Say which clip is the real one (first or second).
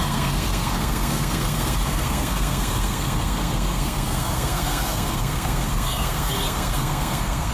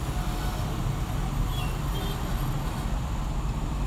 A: second